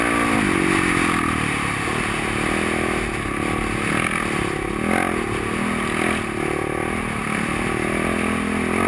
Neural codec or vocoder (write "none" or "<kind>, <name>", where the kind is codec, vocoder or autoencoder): none